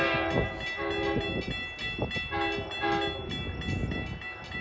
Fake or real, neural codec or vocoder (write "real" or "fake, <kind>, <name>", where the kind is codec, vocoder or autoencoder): real